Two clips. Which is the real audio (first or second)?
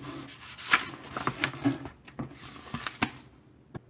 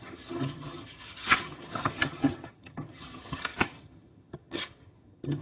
first